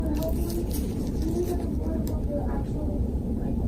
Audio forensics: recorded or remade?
recorded